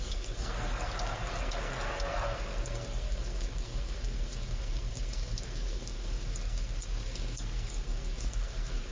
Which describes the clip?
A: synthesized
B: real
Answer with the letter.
A